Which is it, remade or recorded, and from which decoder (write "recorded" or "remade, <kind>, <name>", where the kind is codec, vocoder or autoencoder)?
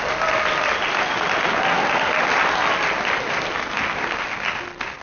recorded